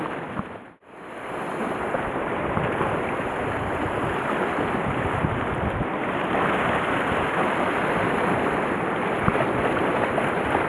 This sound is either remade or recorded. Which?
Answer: recorded